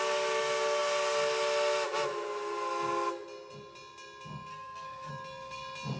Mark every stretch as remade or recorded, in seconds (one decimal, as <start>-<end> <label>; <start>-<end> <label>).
0.0-4.5 recorded; 4.5-5.1 remade; 5.1-6.0 recorded